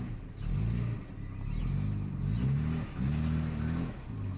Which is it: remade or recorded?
recorded